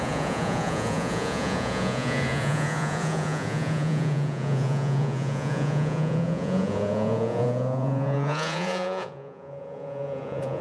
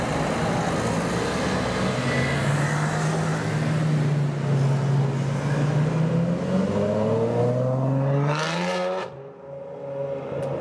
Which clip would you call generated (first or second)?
first